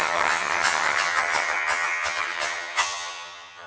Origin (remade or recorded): remade